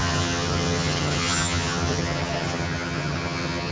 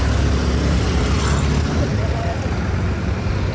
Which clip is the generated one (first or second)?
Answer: first